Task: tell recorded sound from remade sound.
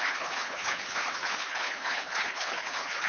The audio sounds remade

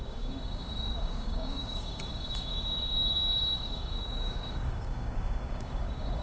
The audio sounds remade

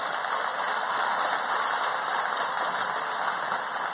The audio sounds recorded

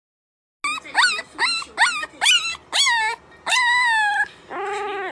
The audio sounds recorded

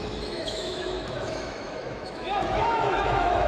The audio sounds remade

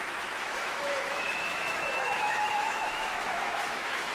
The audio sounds remade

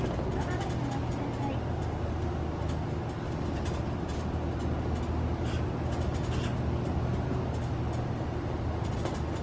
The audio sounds recorded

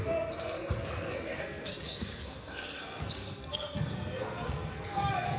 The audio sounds remade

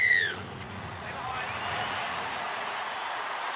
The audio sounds remade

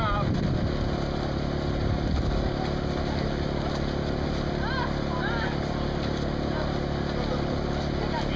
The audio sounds recorded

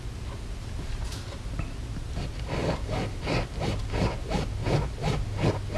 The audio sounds recorded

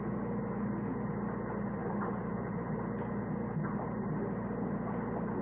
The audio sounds recorded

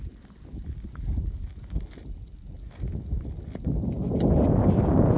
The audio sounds recorded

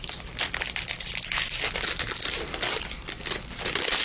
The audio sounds recorded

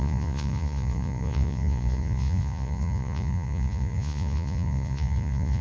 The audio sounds remade